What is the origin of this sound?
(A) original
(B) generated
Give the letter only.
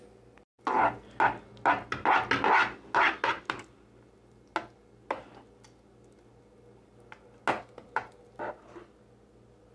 A